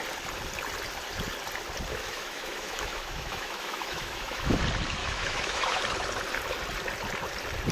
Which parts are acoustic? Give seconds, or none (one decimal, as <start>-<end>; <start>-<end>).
0.0-1.9; 4.6-5.0; 5.8-7.7